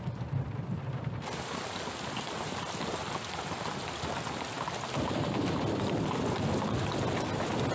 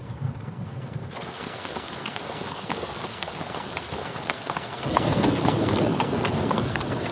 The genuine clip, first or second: first